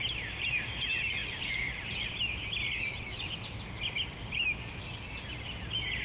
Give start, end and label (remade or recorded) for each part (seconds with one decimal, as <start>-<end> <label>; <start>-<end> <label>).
0.0-6.0 recorded